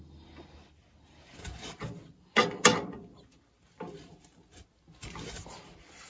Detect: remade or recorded recorded